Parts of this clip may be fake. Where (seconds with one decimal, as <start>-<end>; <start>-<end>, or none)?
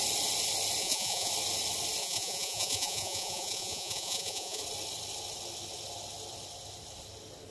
0.8-1.3; 2.0-4.6